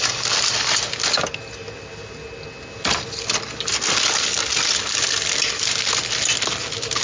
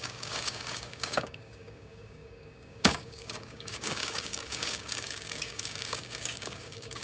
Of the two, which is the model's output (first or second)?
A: second